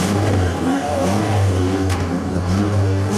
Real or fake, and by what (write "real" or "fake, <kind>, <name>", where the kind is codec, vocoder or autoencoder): fake, codec, DAC